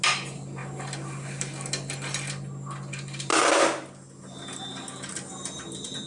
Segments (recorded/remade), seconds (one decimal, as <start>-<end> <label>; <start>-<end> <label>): 0.0-6.1 recorded